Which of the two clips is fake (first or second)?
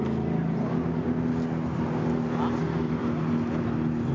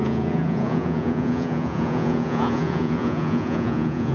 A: second